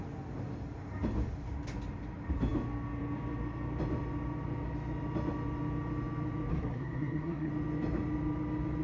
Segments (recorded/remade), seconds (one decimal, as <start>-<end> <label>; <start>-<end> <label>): 0.0-6.5 recorded; 6.5-7.5 remade; 7.5-8.8 recorded